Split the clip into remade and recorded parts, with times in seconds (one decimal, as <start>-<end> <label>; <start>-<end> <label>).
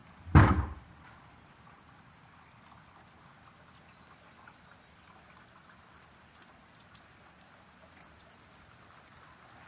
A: 0.0-1.5 remade; 1.5-9.7 recorded